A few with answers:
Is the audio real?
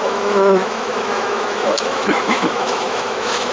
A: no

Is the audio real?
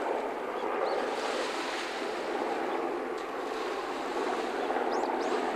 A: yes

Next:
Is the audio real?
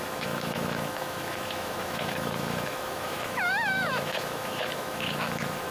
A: no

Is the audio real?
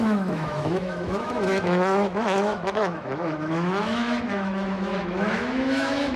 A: no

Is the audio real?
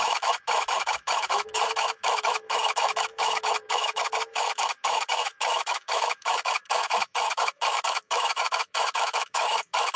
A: no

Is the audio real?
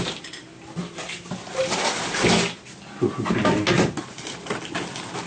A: yes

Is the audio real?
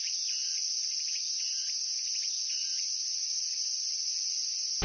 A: yes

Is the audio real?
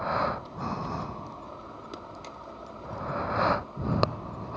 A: yes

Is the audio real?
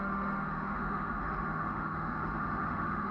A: no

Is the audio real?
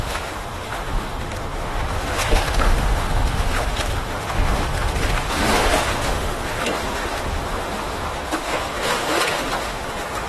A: no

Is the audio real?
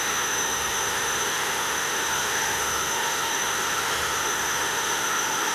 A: no